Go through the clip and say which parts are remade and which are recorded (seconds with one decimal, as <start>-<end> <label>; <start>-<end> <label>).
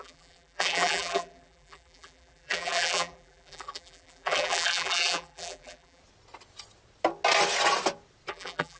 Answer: 0.0-6.0 remade; 6.0-8.3 recorded; 8.3-8.8 remade